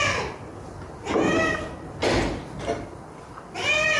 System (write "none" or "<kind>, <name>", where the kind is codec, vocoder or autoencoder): none